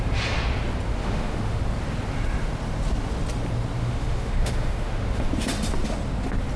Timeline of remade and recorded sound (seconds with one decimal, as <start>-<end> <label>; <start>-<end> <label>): 0.0-1.0 recorded; 1.0-1.6 remade; 1.6-3.8 recorded; 3.8-5.3 remade; 5.3-6.6 recorded